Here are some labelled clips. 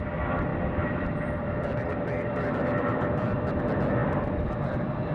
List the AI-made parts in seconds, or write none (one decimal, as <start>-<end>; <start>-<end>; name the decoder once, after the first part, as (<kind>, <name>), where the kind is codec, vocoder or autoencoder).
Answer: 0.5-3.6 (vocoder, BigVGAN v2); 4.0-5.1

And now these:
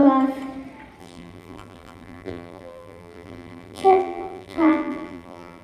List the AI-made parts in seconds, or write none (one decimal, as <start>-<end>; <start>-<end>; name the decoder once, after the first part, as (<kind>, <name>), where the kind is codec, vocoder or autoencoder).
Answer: 1.0-5.6 (vocoder, BigVGAN v2)

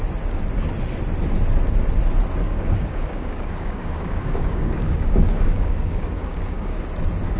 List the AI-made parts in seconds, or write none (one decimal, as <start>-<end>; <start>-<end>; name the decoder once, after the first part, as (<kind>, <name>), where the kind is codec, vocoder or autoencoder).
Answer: 2.4-6.8 (codec, DAC)